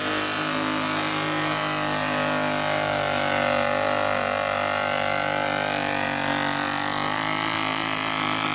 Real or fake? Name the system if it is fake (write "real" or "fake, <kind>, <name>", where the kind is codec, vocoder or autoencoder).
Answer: real